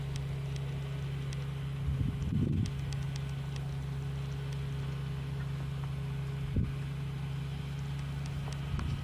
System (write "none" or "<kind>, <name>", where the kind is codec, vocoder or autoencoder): none